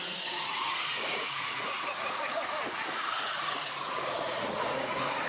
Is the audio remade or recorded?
remade